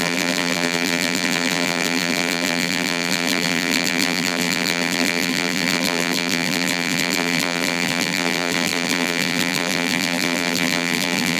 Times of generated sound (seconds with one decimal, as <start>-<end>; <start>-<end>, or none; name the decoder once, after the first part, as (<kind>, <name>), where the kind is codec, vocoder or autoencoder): 0.0-11.4 (vocoder, BigVGAN v2)